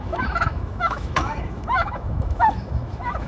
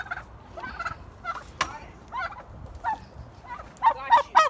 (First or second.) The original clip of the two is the second